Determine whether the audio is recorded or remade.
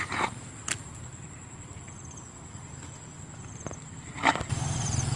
recorded